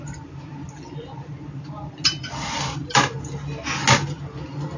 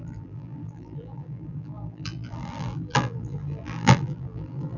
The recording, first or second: first